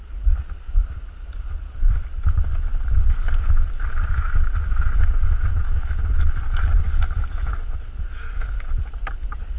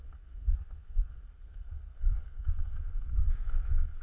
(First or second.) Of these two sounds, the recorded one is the first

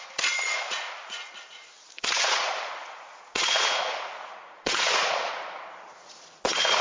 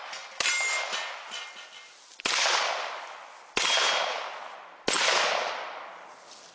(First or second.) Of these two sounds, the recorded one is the second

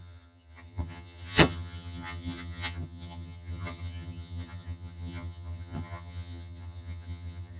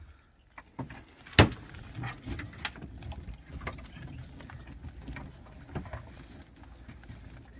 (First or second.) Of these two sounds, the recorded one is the second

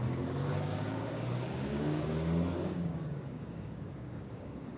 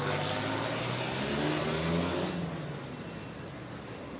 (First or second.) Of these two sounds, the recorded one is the second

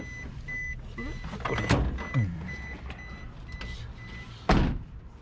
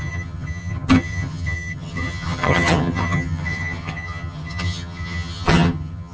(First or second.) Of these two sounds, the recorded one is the first